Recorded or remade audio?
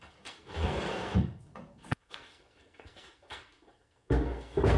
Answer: remade